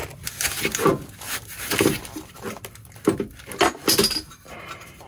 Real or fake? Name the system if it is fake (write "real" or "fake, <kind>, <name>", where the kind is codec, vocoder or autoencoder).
real